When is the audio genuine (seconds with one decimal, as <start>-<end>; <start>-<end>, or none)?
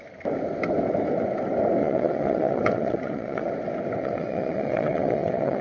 0.0-1.8; 3.5-4.0